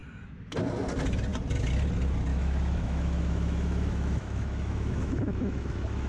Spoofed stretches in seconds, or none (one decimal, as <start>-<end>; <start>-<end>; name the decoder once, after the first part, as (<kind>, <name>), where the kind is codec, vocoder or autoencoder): 2.3-6.1 (autoencoder, DAC-VAE)